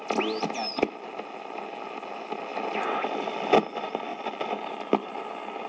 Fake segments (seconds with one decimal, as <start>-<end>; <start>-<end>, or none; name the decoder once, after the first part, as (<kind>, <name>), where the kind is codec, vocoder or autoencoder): none